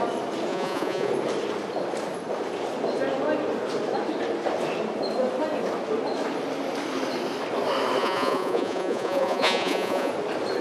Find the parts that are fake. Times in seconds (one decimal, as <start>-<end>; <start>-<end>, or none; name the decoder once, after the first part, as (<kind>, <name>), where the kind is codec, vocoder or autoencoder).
0.5-1.1 (vocoder, Vocos); 8.0-10.1